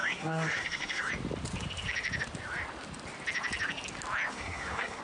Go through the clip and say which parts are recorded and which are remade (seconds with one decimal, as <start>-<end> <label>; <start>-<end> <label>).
0.0-1.1 remade; 1.1-4.3 recorded; 4.3-5.0 remade